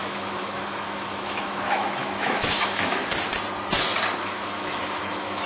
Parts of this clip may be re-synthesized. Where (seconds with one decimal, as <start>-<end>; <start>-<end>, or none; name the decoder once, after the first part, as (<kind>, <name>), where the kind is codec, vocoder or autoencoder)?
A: 0.0-3.0 (autoencoder, DAC-VAE); 4.2-5.5